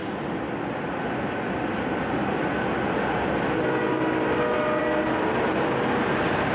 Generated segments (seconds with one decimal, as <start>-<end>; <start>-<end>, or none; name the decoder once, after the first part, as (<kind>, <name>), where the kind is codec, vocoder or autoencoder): none